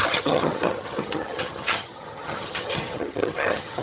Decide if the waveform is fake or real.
fake